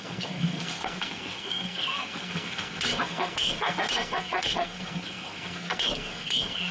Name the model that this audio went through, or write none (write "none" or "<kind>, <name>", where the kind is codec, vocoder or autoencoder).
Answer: codec, SNAC